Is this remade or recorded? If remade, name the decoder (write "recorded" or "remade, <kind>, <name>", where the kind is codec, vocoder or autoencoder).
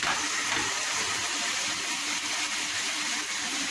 recorded